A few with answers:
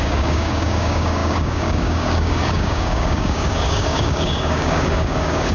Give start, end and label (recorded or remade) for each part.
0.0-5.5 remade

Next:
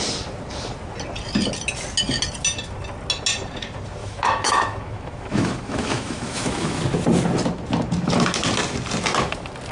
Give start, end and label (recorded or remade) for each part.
0.0-4.0 recorded; 4.0-6.8 remade; 6.8-9.7 recorded

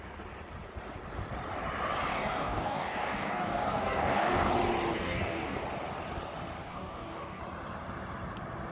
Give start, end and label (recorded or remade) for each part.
0.0-2.1 recorded; 2.1-4.5 remade; 4.5-4.9 recorded; 4.9-5.6 remade; 5.6-6.6 recorded; 6.6-7.4 remade; 7.4-8.7 recorded

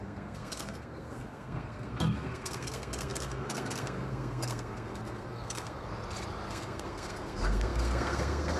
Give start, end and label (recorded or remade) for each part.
0.0-5.9 remade; 5.9-6.5 recorded; 6.5-8.6 remade

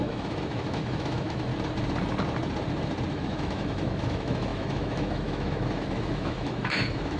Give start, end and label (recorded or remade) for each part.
0.0-1.5 remade; 1.5-3.1 recorded; 3.1-7.2 remade

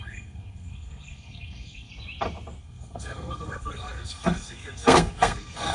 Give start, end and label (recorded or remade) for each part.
0.0-1.9 remade; 1.9-2.6 recorded; 2.6-5.7 remade

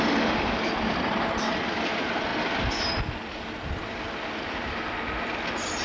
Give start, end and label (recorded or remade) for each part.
0.0-5.8 recorded

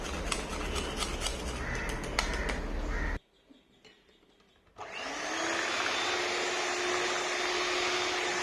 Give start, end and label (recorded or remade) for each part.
0.0-8.4 recorded